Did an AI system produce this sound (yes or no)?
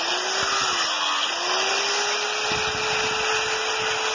no